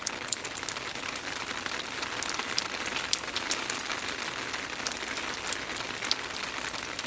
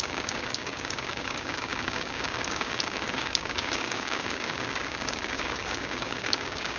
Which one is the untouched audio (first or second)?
first